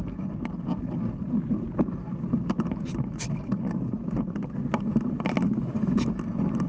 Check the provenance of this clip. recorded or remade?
recorded